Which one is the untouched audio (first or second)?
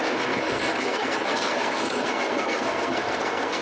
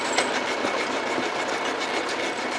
second